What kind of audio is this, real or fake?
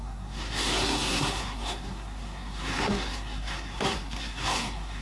fake